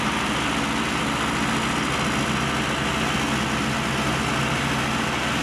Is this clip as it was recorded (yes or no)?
yes